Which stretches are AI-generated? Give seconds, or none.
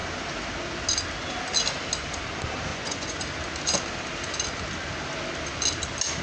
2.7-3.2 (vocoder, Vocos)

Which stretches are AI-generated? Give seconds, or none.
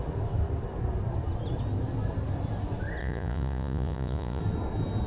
3.0-4.4 (vocoder, Vocos)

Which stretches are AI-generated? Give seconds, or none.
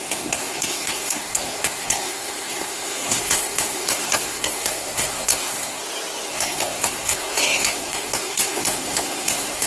0.0-5.8 (codec, SNAC); 6.3-9.7